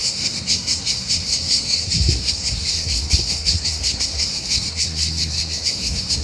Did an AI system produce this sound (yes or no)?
yes